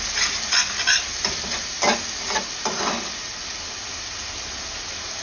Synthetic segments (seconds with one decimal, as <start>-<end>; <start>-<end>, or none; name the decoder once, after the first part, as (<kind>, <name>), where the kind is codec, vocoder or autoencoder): none